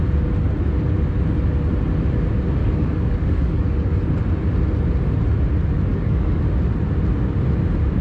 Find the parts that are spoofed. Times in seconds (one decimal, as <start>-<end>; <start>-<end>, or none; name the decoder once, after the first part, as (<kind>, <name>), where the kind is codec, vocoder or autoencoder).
2.6-4.1 (codec, DAC); 5.9-6.4